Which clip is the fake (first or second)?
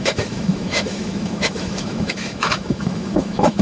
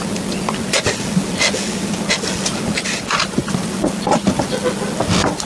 first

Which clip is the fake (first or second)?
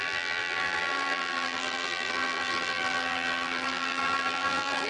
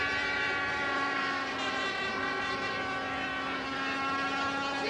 first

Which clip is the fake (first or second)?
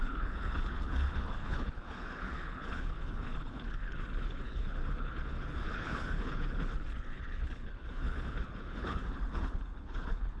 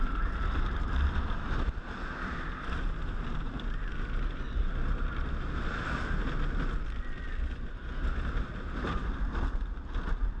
first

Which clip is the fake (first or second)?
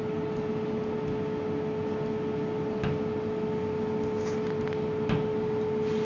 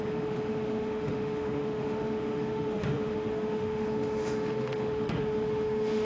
second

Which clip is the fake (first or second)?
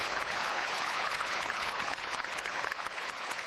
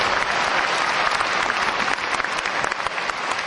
first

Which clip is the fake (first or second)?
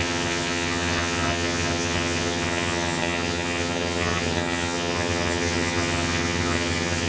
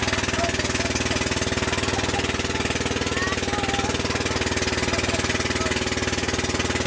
first